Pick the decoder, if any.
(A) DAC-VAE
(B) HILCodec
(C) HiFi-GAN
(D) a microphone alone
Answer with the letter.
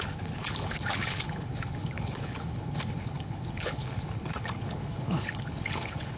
B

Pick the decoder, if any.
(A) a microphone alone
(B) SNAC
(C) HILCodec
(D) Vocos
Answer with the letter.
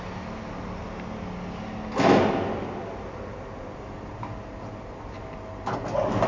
A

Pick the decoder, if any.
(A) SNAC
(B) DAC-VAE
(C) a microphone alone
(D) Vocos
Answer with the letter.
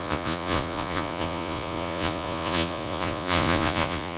D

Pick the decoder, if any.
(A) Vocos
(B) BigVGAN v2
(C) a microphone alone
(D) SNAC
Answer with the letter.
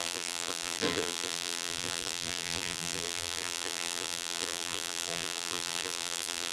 B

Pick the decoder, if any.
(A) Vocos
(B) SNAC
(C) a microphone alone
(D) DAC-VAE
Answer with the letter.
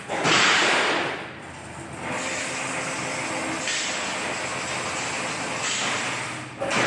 C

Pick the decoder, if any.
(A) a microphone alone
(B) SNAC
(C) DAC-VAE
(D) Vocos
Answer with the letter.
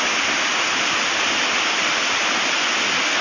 A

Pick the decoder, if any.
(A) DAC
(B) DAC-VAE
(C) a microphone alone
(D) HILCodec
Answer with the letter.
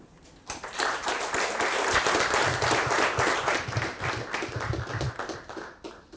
C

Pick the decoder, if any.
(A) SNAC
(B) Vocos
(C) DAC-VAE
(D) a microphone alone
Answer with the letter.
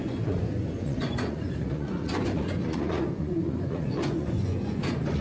B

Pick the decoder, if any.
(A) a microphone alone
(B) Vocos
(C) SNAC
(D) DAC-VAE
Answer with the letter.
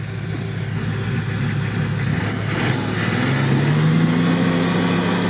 A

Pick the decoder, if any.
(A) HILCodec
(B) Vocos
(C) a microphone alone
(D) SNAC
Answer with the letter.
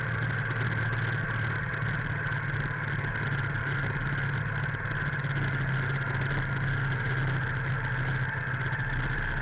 C